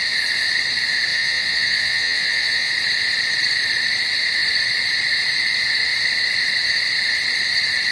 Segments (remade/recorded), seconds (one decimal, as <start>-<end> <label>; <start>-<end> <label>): 0.0-1.1 recorded; 1.1-2.7 remade; 2.7-7.9 recorded